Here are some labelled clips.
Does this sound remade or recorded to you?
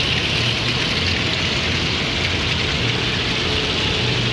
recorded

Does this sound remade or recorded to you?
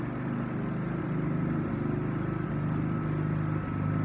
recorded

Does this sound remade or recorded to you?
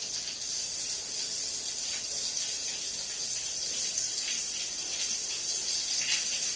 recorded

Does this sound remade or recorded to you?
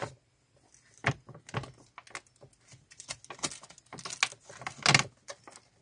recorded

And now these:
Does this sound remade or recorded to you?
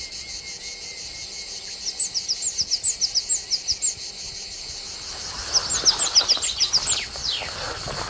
recorded